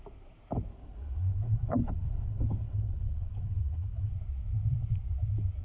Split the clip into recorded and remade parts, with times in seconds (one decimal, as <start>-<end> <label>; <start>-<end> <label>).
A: 0.0-0.7 recorded; 0.7-4.1 remade; 4.1-5.6 recorded